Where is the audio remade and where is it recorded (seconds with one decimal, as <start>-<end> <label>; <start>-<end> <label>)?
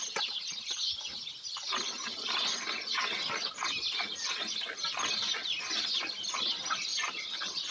0.0-7.7 recorded